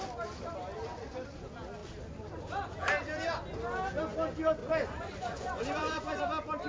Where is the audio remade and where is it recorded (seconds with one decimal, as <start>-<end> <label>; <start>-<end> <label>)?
0.0-4.6 recorded; 4.6-6.2 remade; 6.2-6.7 recorded